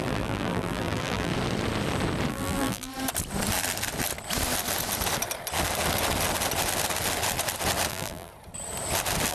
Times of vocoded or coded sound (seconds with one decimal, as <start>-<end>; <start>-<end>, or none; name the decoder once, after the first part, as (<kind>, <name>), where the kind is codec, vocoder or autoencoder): 0.0-1.3 (vocoder, BigVGAN v2); 2.3-2.9; 7.9-8.3

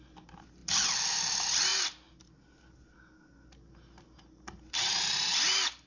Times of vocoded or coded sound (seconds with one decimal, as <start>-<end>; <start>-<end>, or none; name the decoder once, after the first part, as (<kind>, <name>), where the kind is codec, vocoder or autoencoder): none